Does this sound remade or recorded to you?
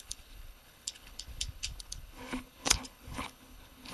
remade